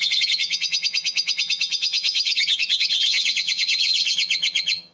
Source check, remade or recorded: remade